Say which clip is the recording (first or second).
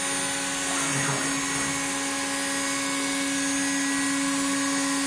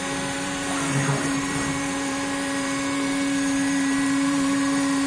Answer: first